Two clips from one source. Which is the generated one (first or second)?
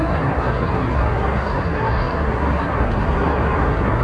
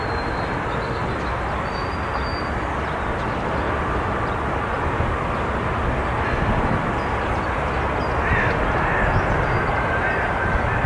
first